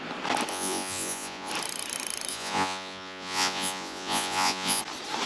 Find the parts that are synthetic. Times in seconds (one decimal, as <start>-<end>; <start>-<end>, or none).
0.5-1.5; 2.3-4.8